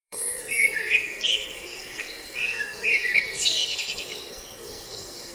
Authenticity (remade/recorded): remade